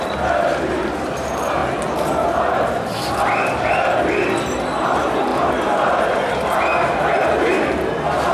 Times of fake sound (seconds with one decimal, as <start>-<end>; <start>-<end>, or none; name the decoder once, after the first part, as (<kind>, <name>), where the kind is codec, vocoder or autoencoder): none